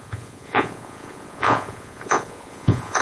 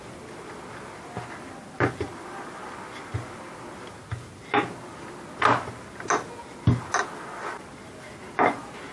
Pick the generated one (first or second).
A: first